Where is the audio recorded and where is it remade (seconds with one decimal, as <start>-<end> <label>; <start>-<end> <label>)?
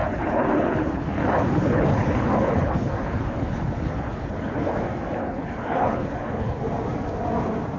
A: 0.0-4.7 remade; 4.7-5.2 recorded; 5.2-6.6 remade; 6.6-7.8 recorded